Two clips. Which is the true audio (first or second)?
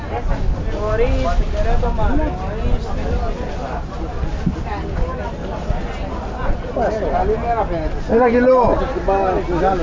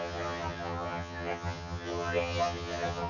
first